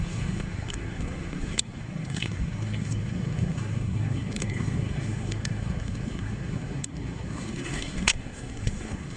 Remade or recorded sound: remade